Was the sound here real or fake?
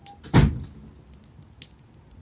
real